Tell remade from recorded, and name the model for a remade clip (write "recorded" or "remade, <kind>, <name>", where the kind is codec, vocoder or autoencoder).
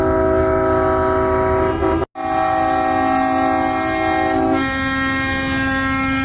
recorded